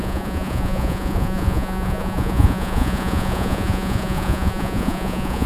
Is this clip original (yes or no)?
no